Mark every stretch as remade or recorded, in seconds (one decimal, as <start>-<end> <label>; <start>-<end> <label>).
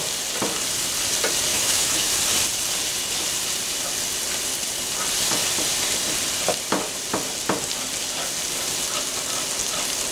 0.0-1.5 recorded; 1.5-2.1 remade; 2.1-10.1 recorded